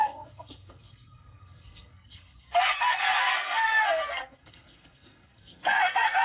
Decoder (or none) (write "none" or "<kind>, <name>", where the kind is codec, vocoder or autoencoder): codec, SNAC